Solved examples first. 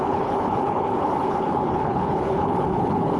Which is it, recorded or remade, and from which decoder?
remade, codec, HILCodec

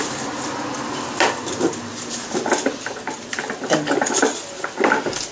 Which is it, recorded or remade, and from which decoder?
recorded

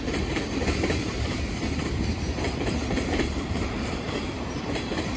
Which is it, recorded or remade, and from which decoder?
remade, vocoder, BigVGAN v2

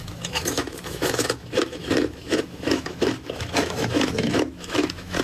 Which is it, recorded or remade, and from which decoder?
remade, autoencoder, DAC-VAE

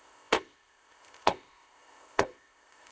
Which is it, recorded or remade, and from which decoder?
remade, codec, ZipCodec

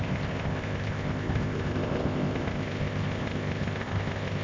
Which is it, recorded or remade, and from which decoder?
remade, codec, ZipCodec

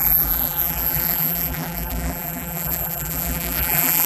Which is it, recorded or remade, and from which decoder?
remade, vocoder, BigVGAN v2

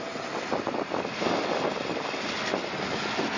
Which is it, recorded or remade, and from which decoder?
recorded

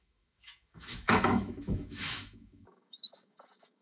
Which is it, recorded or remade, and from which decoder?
remade, autoencoder, DAC-VAE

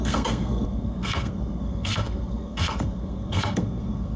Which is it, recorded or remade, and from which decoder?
remade, codec, SNAC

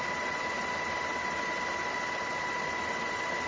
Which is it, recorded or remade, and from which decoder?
recorded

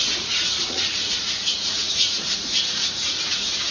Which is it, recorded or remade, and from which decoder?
remade, vocoder, Vocos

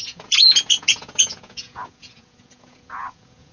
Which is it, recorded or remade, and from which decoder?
remade, vocoder, Vocos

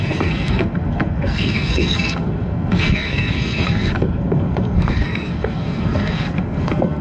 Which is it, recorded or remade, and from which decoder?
remade, codec, SNAC